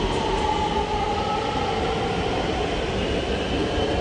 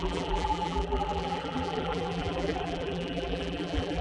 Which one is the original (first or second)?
first